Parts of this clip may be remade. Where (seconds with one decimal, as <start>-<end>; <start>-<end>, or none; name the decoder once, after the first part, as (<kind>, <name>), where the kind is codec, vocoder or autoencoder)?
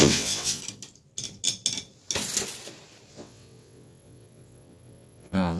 0.0-0.6 (vocoder, WaveNeXt); 3.1-5.6